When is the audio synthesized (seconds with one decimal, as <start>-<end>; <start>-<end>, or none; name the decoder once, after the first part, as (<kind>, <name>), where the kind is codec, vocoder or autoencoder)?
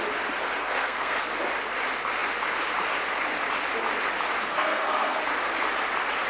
0.6-1.2 (codec, SNAC); 4.5-5.2